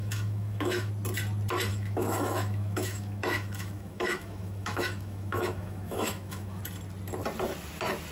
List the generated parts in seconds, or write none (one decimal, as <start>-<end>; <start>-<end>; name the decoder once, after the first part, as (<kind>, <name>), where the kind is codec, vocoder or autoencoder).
0.0-0.9 (autoencoder, DAC-VAE); 1.7-6.6